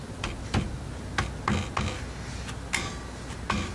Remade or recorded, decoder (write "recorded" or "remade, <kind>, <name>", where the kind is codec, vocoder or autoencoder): recorded